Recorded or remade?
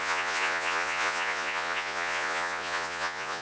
remade